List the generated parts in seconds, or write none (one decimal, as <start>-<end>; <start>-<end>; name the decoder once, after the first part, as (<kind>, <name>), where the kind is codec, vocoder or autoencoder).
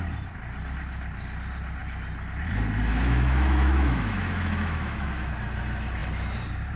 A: 2.9-5.3 (autoencoder, DAC-VAE)